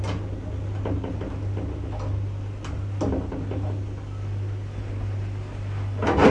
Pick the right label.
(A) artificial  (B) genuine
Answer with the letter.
B